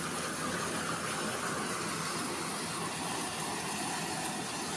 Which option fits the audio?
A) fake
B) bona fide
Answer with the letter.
B